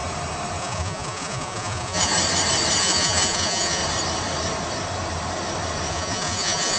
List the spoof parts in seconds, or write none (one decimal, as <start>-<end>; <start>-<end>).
0.6-2.1; 2.8-3.8; 5.9-6.8